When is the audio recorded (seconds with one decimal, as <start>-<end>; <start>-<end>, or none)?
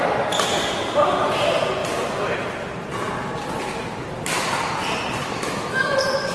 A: 0.0-5.2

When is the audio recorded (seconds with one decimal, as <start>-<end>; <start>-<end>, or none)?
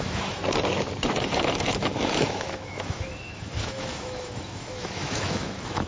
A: 0.4-1.2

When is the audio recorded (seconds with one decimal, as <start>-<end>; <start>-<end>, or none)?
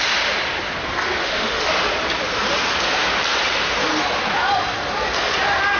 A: 0.0-1.2; 1.7-5.8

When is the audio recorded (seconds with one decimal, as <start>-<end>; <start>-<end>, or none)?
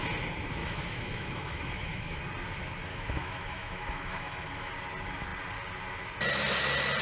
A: 0.0-0.6; 2.2-2.9; 4.7-7.0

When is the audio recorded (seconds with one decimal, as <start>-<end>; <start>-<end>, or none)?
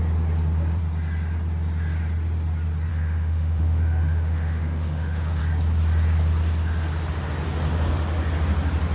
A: 0.0-2.9; 5.4-8.9